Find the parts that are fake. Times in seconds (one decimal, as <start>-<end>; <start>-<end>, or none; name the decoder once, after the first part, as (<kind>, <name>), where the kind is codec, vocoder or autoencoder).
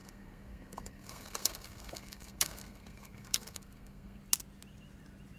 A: 0.0-4.2 (codec, SNAC)